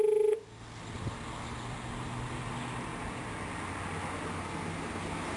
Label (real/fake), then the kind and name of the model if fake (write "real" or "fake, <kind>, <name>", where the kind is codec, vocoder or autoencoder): real